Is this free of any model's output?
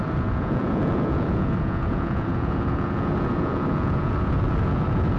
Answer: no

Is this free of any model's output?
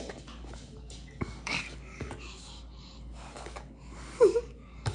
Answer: no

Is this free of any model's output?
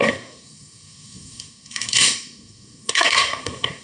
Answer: no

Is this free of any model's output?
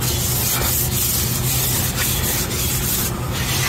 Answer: yes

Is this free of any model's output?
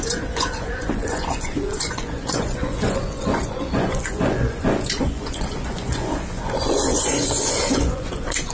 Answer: no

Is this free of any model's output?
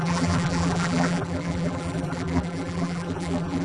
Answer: no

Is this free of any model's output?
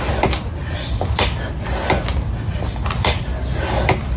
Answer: yes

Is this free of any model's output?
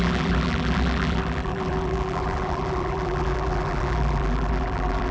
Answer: no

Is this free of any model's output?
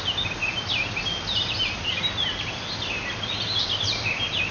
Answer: yes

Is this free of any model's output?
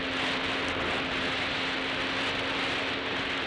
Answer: yes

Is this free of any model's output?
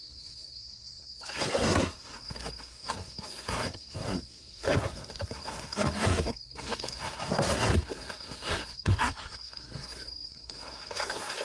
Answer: no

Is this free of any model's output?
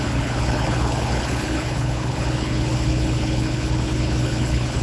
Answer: no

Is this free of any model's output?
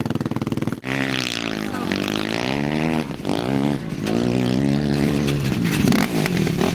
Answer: no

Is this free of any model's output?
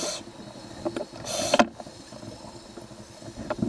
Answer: yes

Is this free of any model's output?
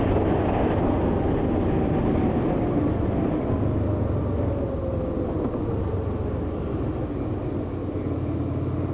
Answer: yes